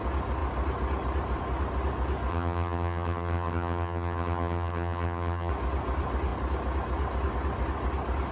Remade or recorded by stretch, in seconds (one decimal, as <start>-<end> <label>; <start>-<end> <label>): 0.0-2.3 recorded; 2.3-5.5 remade; 5.5-8.3 recorded